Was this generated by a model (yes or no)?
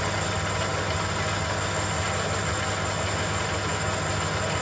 no